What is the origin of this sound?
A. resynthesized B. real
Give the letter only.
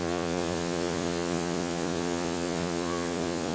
A